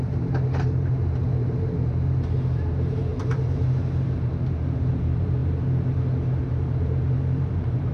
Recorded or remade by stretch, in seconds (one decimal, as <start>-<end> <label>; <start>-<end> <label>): 0.0-5.4 remade; 5.4-6.5 recorded; 6.5-7.9 remade